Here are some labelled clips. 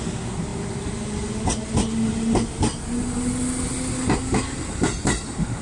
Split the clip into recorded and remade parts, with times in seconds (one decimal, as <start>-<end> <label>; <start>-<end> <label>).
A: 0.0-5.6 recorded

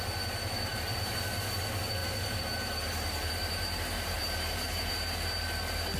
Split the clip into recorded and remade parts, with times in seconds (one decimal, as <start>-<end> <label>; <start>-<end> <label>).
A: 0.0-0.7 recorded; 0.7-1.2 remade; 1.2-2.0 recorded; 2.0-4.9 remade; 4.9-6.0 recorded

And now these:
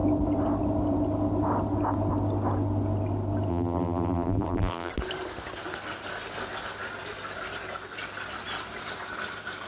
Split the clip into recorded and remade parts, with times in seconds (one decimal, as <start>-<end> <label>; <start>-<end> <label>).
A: 0.0-3.5 recorded; 3.5-4.9 remade; 4.9-9.7 recorded

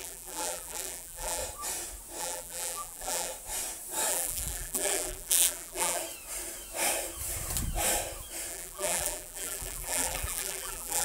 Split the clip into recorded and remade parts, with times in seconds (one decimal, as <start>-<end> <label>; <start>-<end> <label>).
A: 0.0-1.4 remade; 1.4-2.2 recorded; 2.2-3.3 remade; 3.3-4.1 recorded; 4.1-6.0 remade; 6.0-8.5 recorded; 8.5-11.0 remade

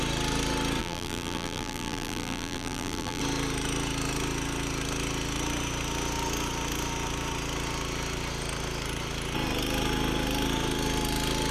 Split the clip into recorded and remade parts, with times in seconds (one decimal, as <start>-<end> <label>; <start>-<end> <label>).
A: 0.0-0.8 recorded; 0.8-3.2 remade; 3.2-11.5 recorded

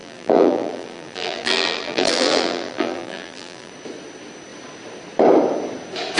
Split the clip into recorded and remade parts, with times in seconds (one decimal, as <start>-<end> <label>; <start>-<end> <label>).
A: 0.0-3.7 remade; 3.7-6.2 recorded